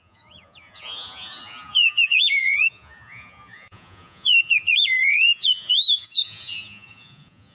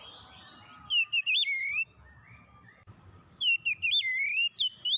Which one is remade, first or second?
first